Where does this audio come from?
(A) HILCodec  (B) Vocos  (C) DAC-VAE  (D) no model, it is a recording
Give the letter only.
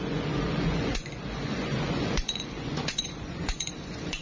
B